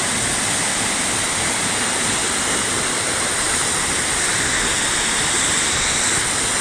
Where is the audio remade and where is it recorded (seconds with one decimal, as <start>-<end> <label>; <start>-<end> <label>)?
0.0-6.6 recorded